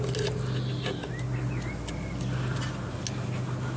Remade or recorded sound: recorded